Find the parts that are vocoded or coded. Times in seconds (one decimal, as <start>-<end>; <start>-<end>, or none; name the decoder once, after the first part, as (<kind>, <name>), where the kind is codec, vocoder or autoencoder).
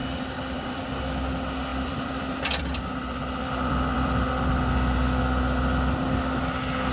0.0-0.9 (vocoder, BigVGAN v2); 1.7-4.3